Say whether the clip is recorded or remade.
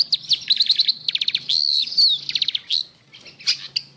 recorded